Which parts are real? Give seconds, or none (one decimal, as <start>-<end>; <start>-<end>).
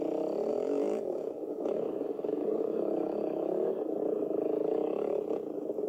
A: 0.0-0.5; 4.0-4.6; 5.2-5.9